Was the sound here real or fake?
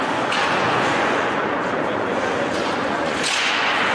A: fake